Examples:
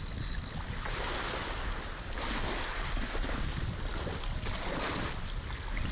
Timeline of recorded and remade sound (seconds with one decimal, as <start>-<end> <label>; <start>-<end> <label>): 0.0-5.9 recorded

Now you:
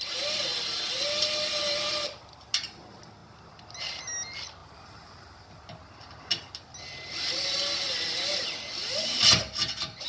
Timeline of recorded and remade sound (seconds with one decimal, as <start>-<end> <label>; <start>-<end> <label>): 0.0-10.1 recorded

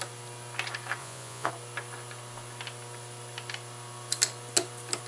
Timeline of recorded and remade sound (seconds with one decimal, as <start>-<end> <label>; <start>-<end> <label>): 0.0-1.0 recorded; 1.0-1.5 remade; 1.5-5.1 recorded

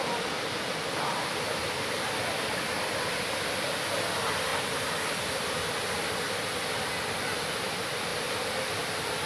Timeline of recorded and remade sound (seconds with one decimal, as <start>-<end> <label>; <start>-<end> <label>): 0.0-9.3 recorded

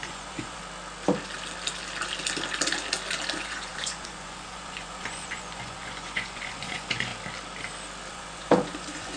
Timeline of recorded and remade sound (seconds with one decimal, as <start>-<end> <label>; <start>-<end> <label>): 0.0-0.6 remade; 0.6-3.3 recorded; 3.3-7.1 remade; 7.1-8.1 recorded; 8.1-9.2 remade

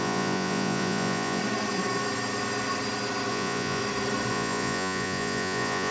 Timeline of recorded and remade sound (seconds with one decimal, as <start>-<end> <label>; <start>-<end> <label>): 0.0-1.4 remade; 1.4-3.3 recorded; 3.3-3.8 remade; 3.8-4.3 recorded; 4.3-5.9 remade

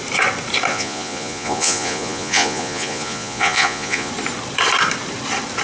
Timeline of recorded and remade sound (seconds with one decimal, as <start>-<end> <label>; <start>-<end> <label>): 0.0-0.7 recorded; 0.7-4.1 remade; 4.1-5.6 recorded